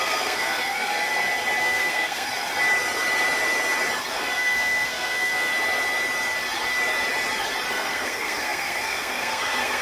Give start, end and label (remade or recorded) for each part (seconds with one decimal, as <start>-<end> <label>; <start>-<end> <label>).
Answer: 0.0-1.1 remade; 1.1-1.6 recorded; 1.6-2.3 remade; 2.3-4.1 recorded; 4.1-5.5 remade; 5.5-7.7 recorded; 7.7-9.8 remade